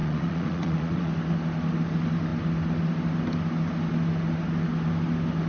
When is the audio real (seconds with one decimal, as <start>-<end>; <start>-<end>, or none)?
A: 1.1-5.5